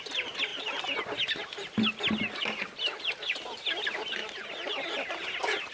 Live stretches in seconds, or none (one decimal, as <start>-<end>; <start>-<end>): 0.0-5.7